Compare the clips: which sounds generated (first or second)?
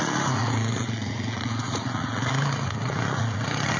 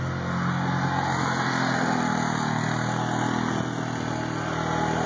first